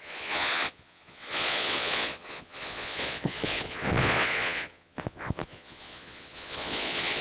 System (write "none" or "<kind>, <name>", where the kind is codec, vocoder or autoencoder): vocoder, Vocos